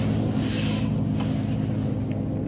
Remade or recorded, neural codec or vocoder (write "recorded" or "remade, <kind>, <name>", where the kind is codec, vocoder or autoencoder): recorded